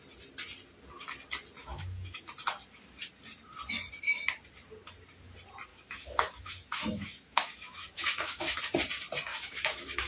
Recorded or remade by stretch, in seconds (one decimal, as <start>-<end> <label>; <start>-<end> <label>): 0.0-1.6 recorded; 1.6-2.3 remade; 2.3-5.7 recorded; 5.7-8.6 remade; 8.6-9.3 recorded; 9.3-10.1 remade